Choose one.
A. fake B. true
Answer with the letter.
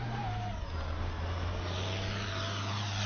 B